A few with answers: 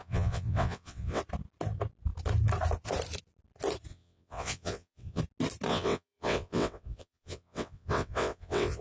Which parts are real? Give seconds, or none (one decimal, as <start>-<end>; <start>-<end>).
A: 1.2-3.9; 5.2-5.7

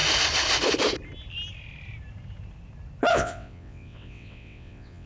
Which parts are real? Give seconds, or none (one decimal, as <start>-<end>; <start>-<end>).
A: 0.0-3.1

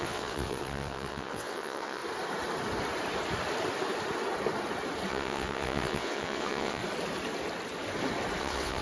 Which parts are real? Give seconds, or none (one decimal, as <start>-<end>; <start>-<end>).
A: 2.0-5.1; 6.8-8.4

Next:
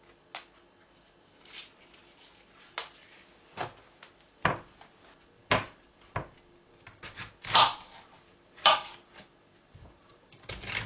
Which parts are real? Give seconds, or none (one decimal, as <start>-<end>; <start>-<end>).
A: 0.0-10.9